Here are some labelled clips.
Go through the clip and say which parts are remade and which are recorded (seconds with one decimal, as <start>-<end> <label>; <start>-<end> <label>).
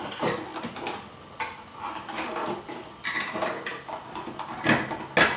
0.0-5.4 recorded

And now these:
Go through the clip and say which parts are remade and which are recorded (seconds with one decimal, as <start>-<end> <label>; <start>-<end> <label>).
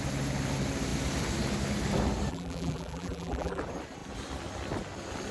0.0-2.3 recorded; 2.3-3.6 remade; 3.6-5.3 recorded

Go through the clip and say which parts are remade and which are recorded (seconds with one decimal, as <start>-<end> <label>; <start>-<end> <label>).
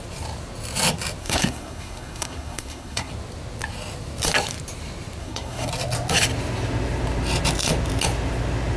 0.0-1.2 recorded; 1.2-3.1 remade; 3.1-5.2 recorded; 5.2-5.7 remade; 5.7-8.8 recorded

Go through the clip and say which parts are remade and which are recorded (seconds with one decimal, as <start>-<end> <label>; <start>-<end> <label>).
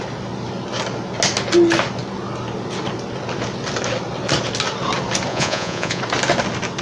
0.0-5.3 recorded; 5.3-6.0 remade; 6.0-6.8 recorded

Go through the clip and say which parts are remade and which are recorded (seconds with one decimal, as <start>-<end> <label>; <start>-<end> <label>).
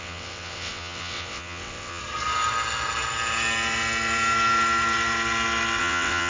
0.0-2.0 remade; 2.0-5.8 recorded; 5.8-6.3 remade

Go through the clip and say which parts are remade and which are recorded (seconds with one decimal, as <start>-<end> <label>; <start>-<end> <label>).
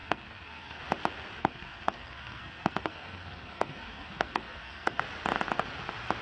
0.0-0.8 remade; 0.8-1.4 recorded; 1.4-5.0 remade; 5.0-6.2 recorded